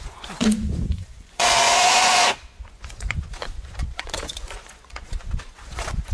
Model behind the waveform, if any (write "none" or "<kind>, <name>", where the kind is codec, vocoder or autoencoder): vocoder, Vocos